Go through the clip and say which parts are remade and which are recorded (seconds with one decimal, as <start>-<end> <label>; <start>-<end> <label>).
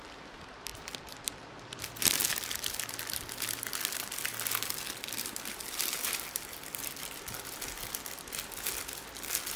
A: 0.0-0.7 recorded; 0.7-1.8 remade; 1.8-5.6 recorded; 5.6-7.5 remade; 7.5-9.6 recorded